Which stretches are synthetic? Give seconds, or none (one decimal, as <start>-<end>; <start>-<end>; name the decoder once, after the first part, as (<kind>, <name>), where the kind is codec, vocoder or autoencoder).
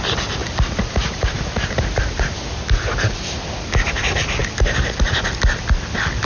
0.4-2.2 (vocoder, BigVGAN v2)